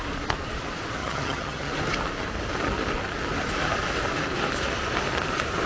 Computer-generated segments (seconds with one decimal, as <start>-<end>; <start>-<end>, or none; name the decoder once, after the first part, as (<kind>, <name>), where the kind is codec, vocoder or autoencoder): 1.0-1.7 (vocoder, HiFi-GAN)